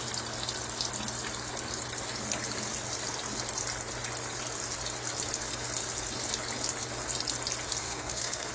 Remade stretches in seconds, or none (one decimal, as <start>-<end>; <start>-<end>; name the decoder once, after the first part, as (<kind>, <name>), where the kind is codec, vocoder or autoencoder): 7.8-8.5 (codec, SNAC)